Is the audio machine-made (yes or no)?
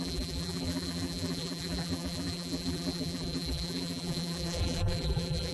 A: yes